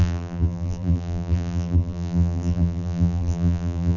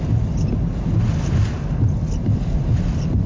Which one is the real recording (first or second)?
second